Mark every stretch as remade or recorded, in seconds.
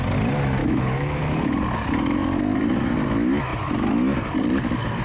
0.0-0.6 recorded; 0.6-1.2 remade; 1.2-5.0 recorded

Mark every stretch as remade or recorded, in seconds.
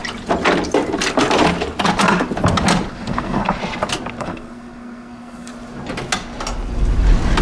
0.0-2.9 recorded; 2.9-3.6 remade; 3.6-4.2 recorded; 4.2-5.5 remade; 5.5-7.4 recorded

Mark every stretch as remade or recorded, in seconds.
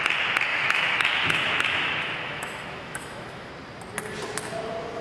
0.0-0.5 recorded; 0.5-3.5 remade; 3.5-5.0 recorded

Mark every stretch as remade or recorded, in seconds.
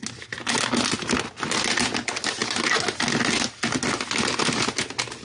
0.0-5.2 recorded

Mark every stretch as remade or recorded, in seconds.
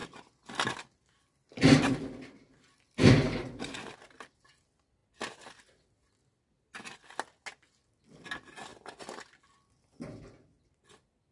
0.0-11.3 recorded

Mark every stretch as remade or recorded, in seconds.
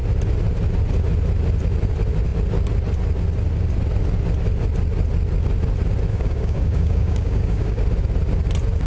0.0-6.1 recorded; 6.1-7.8 remade; 7.8-8.9 recorded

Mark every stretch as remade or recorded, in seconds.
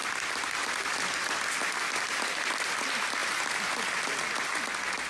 0.0-5.1 recorded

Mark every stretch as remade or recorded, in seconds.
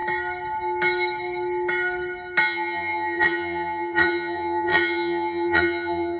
0.0-2.4 recorded; 2.4-6.2 remade